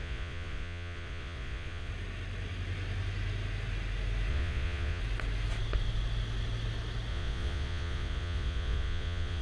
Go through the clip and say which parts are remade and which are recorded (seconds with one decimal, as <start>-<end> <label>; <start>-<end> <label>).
0.0-1.9 remade; 1.9-4.3 recorded; 4.3-5.0 remade; 5.0-7.1 recorded; 7.1-9.4 remade